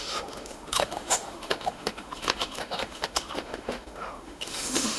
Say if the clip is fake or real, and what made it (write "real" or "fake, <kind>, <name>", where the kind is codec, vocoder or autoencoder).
fake, autoencoder, DAC-VAE